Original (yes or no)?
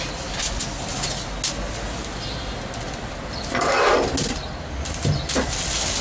yes